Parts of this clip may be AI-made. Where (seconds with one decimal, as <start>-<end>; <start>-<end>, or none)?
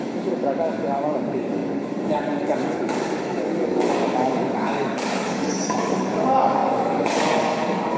0.0-8.0